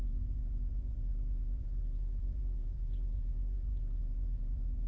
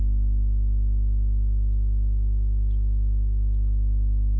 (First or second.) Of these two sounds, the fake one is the first